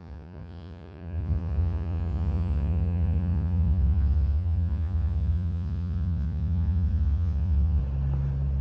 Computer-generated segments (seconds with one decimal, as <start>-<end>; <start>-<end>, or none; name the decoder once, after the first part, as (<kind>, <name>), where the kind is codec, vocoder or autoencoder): 0.0-7.8 (vocoder, Vocos)